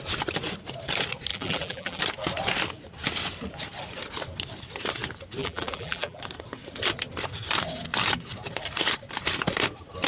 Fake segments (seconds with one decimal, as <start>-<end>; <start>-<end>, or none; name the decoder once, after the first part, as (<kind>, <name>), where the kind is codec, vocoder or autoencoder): 1.3-2.0 (vocoder, BigVGAN v2); 5.4-6.2